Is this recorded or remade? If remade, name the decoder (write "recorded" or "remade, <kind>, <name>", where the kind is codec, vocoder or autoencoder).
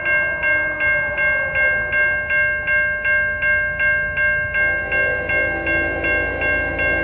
recorded